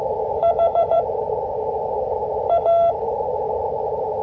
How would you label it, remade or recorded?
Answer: remade